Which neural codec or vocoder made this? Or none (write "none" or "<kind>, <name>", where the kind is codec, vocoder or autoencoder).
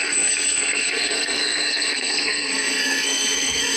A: codec, SNAC